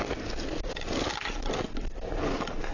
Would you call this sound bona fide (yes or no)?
yes